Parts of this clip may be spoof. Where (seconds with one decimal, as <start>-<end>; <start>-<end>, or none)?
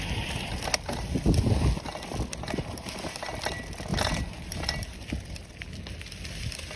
3.9-4.7